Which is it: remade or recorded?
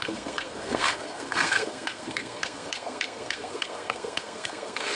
remade